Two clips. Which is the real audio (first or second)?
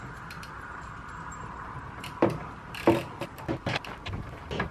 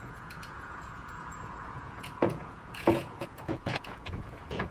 first